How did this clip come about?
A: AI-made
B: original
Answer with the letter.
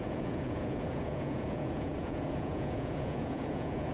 A